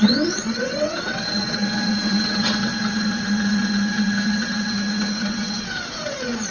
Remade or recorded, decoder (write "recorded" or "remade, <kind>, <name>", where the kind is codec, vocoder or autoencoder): remade, vocoder, WaveNeXt